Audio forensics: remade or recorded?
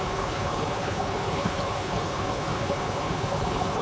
remade